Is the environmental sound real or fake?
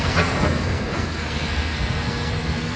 fake